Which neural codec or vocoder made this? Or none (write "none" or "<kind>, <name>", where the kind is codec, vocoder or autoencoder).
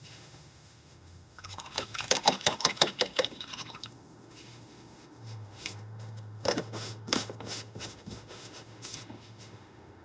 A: autoencoder, DAC-VAE